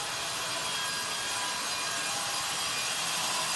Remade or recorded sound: recorded